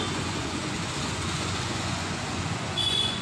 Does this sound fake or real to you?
fake